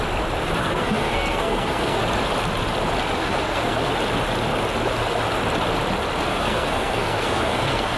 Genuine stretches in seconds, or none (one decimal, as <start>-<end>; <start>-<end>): 0.0-0.6; 2.0-3.2; 3.9-6.3